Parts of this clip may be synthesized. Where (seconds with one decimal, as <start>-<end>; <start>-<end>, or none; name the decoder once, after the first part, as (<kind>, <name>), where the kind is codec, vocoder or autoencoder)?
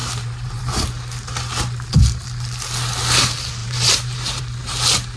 0.0-0.6 (vocoder, BigVGAN v2); 3.6-4.4